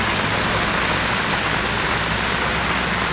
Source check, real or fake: real